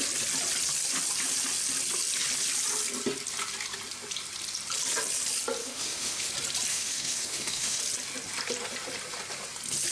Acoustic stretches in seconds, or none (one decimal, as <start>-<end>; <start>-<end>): 0.0-5.6; 6.3-6.7; 7.8-9.9